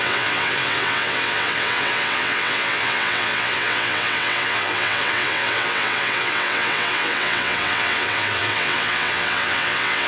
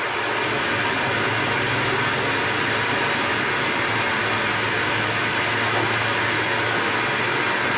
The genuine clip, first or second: second